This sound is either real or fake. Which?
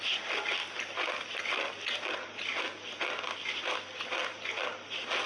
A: real